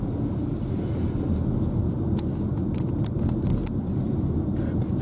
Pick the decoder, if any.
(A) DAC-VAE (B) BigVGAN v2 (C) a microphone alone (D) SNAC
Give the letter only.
C